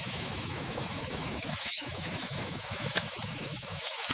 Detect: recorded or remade remade